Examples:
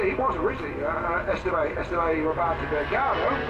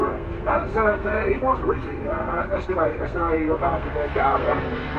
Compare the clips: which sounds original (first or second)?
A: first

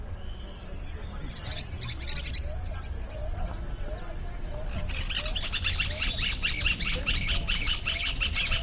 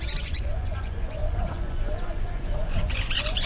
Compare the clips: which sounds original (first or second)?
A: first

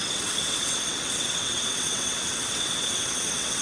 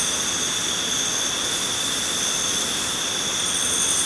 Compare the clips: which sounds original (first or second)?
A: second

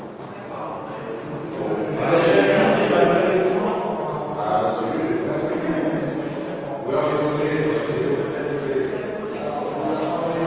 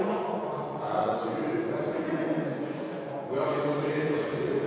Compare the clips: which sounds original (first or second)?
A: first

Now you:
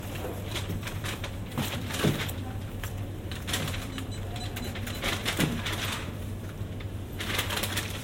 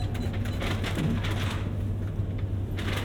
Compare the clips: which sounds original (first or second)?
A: second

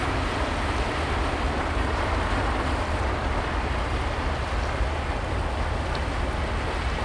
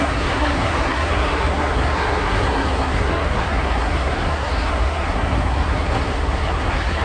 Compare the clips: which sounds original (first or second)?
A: first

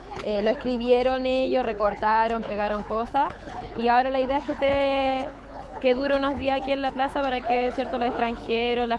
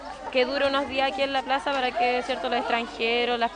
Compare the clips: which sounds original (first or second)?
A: second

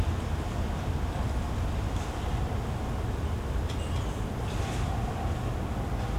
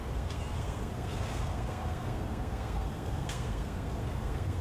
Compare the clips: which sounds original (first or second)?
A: first